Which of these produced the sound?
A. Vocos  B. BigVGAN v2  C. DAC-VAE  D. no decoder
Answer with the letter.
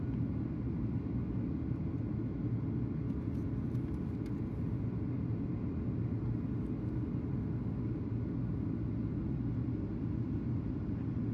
D